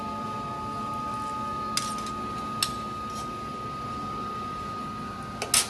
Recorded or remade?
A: recorded